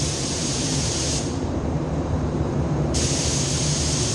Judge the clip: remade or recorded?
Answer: remade